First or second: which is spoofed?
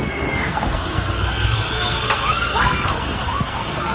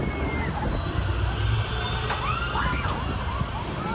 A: first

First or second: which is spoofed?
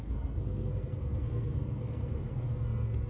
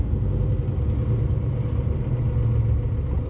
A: first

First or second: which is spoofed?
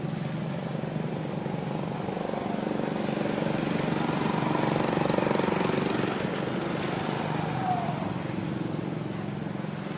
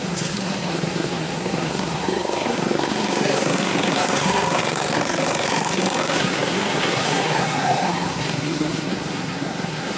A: second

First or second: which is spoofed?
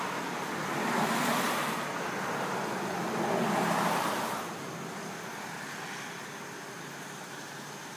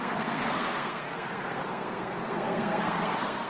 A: second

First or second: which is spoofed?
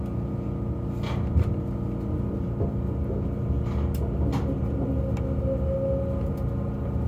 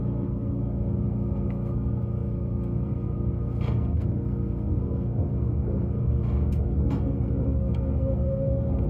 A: second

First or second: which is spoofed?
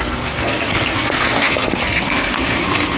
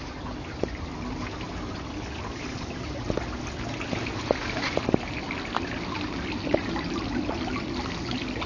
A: first